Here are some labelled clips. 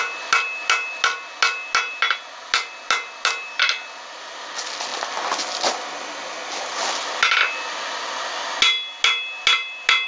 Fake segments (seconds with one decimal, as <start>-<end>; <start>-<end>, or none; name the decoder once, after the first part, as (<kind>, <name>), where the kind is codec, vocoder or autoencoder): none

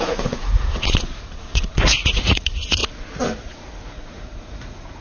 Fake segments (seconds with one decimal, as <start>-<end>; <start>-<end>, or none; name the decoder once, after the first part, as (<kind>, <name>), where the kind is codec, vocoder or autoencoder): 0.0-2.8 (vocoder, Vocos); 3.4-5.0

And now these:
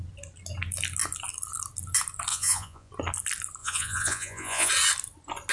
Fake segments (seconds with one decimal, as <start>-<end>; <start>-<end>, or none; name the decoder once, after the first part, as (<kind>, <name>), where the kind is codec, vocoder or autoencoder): 2.3-2.9 (vocoder, Vocos); 3.6-4.7

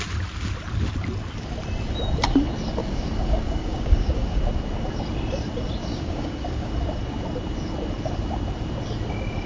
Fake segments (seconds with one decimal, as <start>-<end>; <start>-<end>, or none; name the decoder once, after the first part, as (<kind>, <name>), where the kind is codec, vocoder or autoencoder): 2.8-4.4 (codec, DAC); 5.9-6.7

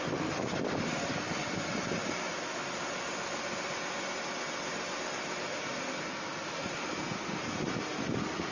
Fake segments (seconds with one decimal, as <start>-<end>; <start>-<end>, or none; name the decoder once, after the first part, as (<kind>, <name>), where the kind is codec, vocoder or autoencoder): none

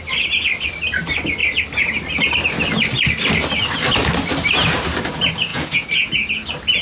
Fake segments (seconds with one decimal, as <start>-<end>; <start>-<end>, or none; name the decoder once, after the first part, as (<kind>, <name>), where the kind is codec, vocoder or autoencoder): 5.5-6.3 (vocoder, Vocos)

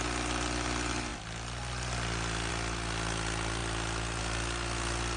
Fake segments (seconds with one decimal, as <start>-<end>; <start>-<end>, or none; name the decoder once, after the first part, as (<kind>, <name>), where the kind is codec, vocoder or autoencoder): none